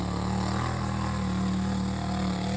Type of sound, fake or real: real